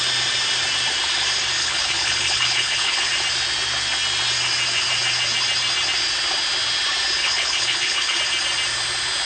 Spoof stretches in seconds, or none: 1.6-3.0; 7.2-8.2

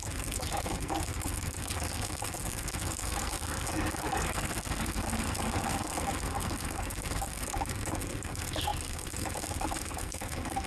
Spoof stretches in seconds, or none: 0.0-10.7

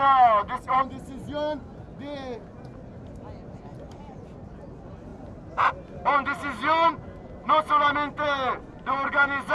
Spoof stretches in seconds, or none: none

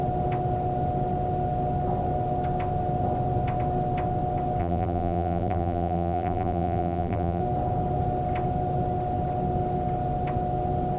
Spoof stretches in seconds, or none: 4.6-7.4

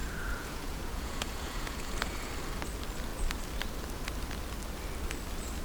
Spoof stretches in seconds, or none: 0.0-2.3

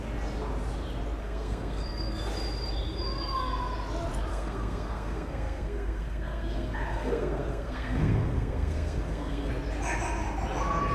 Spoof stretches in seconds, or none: 1.2-2.3; 4.3-9.5

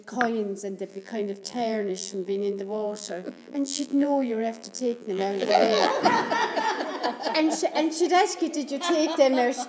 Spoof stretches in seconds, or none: 0.9-5.9

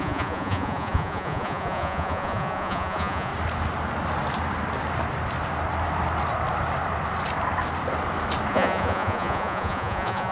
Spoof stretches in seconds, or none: 0.0-3.3; 8.5-10.3